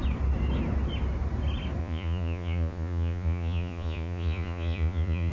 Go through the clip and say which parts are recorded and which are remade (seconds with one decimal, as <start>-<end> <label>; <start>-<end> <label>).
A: 0.0-1.8 recorded; 1.8-5.3 remade